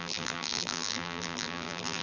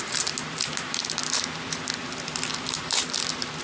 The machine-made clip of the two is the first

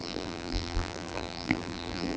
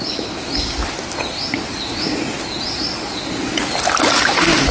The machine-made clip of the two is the first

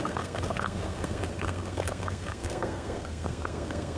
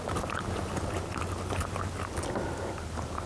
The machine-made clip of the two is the first